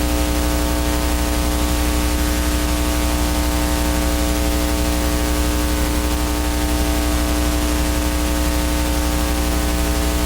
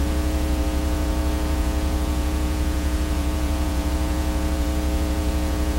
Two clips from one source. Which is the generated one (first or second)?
second